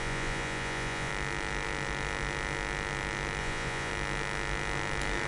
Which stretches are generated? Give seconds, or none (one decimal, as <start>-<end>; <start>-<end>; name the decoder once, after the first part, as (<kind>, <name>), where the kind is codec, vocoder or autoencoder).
0.0-1.1 (vocoder, Vocos); 3.4-3.9

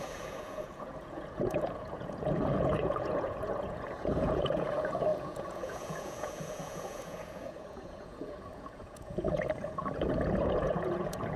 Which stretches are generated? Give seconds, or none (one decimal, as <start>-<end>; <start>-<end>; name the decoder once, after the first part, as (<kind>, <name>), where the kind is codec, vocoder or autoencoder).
0.0-11.4 (vocoder, Vocos)

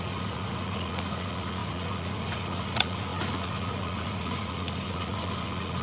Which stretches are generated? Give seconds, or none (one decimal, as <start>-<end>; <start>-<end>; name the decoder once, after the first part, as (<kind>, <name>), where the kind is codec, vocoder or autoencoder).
0.0-5.8 (vocoder, Vocos)

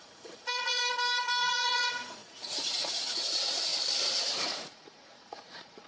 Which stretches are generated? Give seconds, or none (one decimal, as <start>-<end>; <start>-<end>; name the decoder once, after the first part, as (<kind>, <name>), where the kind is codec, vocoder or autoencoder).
0.0-0.8 (vocoder, Vocos); 1.4-3.7; 4.3-5.9

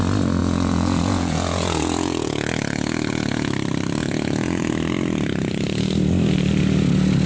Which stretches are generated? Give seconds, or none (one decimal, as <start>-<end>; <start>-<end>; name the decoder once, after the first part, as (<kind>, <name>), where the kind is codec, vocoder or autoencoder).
0.4-3.5 (vocoder, Vocos); 4.0-4.7

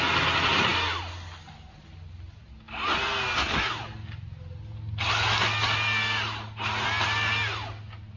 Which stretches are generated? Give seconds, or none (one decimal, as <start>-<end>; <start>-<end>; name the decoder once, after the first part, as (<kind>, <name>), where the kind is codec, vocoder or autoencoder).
none